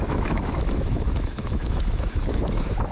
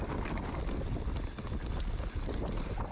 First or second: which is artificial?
first